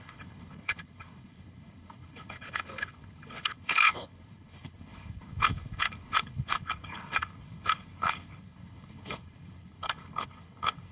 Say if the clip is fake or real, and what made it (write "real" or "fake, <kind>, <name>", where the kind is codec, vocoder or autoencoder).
fake, codec, HILCodec